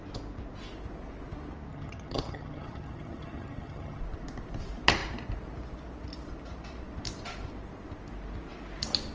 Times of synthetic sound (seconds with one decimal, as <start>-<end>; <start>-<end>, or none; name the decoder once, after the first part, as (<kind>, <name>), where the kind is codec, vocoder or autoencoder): 1.7-4.0 (vocoder, HiFi-GAN)